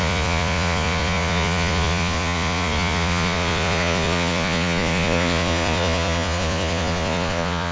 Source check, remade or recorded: remade